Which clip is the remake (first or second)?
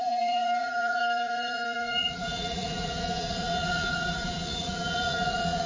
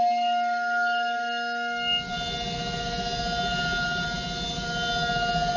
first